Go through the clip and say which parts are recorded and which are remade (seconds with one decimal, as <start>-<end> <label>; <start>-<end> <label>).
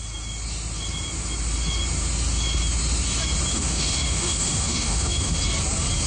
0.0-3.5 recorded; 3.5-5.4 remade; 5.4-6.1 recorded